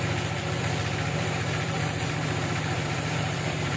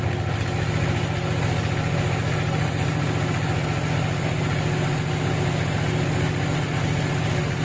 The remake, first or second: first